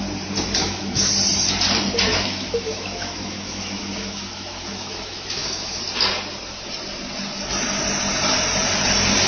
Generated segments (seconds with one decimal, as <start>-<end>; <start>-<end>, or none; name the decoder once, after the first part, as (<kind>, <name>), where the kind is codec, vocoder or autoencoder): 0.6-1.1 (autoencoder, DAC-VAE); 2.1-5.8